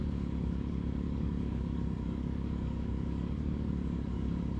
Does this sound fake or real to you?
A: fake